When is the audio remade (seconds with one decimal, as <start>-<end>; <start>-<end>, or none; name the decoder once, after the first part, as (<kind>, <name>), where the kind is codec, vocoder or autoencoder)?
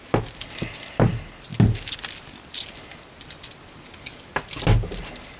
none